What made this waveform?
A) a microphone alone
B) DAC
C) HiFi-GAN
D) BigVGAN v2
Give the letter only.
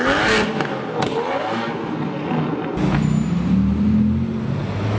A